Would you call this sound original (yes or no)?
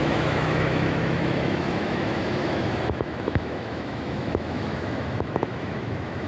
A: no